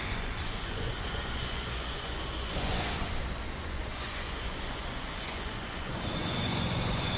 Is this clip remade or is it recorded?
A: remade